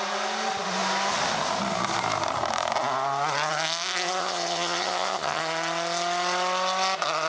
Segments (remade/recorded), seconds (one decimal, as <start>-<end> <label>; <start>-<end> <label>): 0.0-4.2 recorded; 4.2-5.4 remade; 5.4-7.3 recorded